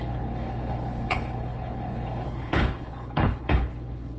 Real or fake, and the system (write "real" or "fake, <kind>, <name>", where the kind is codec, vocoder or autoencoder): fake, codec, HILCodec